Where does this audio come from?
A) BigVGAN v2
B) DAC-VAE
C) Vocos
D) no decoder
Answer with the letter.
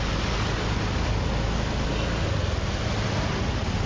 D